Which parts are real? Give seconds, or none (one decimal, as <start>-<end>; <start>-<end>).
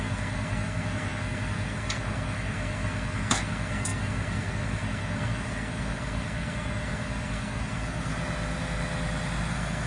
8.1-9.5